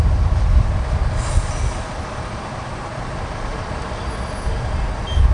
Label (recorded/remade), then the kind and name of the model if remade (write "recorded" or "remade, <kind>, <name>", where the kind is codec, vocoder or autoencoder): recorded